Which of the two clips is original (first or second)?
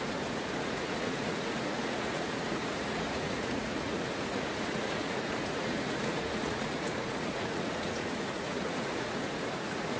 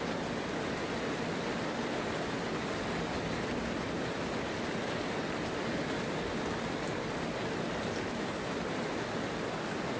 second